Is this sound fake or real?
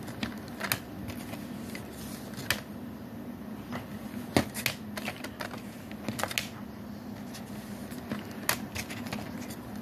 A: real